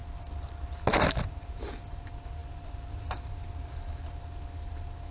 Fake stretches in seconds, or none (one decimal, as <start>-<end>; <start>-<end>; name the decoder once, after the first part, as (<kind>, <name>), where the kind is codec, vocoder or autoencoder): none